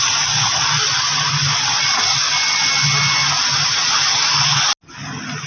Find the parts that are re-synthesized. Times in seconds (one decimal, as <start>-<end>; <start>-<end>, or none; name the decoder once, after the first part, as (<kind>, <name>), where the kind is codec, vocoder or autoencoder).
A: none